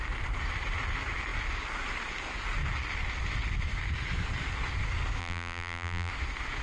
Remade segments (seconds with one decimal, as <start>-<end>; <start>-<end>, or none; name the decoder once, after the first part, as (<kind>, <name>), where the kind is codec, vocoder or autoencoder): 5.2-6.1 (vocoder, BigVGAN v2)